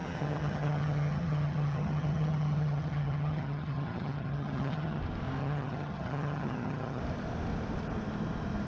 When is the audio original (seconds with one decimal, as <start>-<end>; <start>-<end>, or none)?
5.0-5.4; 7.0-8.7